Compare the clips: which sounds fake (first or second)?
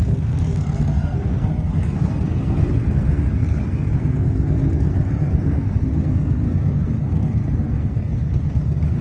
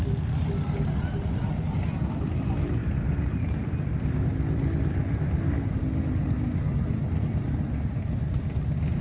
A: first